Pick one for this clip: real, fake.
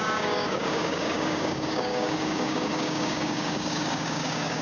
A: fake